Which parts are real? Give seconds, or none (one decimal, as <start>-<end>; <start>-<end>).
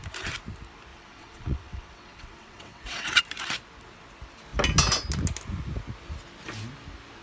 0.0-0.9; 3.2-7.2